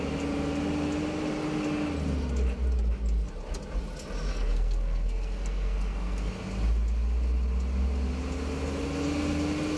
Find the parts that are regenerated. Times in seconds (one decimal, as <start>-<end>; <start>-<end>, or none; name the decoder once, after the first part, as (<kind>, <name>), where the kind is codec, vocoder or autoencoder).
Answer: 4.3-6.3 (codec, SNAC)